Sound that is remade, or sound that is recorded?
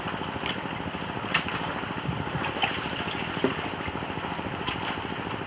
remade